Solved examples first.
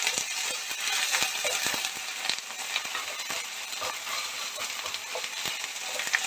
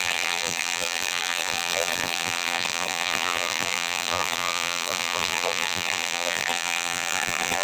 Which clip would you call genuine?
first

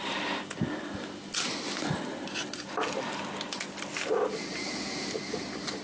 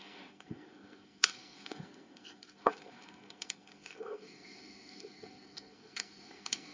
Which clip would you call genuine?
first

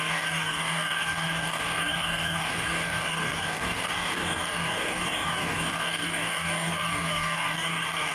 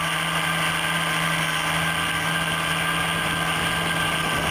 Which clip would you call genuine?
second